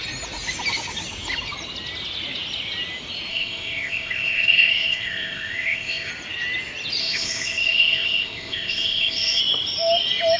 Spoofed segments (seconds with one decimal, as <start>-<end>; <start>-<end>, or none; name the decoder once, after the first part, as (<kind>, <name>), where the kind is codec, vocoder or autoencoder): 3.3-6.1 (codec, ZipCodec); 7.0-9.4